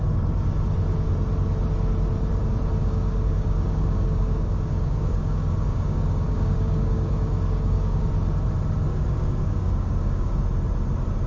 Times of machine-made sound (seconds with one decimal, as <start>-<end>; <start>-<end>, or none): 2.8-8.0; 8.9-10.4